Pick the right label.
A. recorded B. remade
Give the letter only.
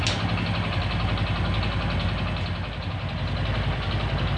A